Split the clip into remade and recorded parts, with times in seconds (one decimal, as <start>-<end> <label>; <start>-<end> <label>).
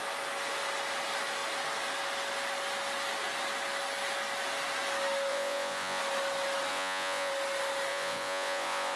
0.0-5.3 recorded; 5.3-6.0 remade; 6.0-6.7 recorded; 6.7-7.3 remade; 7.3-7.9 recorded; 7.9-9.0 remade